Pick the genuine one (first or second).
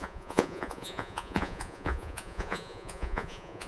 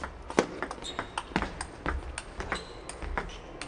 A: second